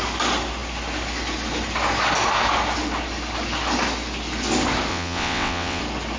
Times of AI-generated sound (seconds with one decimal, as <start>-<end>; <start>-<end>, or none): 4.9-5.8